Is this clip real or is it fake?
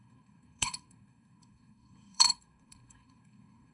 fake